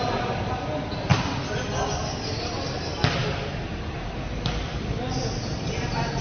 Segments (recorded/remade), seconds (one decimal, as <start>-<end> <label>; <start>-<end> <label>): 0.0-6.2 recorded